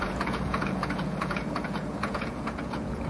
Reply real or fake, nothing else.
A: fake